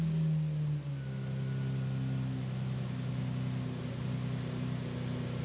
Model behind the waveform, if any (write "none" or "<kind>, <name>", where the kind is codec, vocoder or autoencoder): none